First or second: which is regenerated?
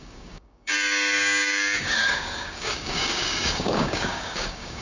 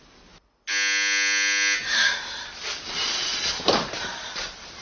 first